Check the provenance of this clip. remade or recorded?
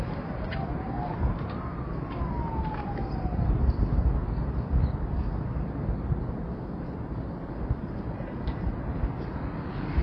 recorded